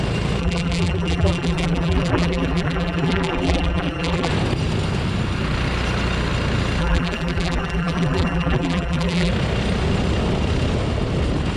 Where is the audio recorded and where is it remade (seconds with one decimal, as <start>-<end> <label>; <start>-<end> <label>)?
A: 0.0-0.4 recorded; 0.4-4.3 remade; 4.3-6.8 recorded; 6.8-9.3 remade; 9.3-11.6 recorded